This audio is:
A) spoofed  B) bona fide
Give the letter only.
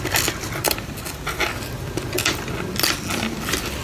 B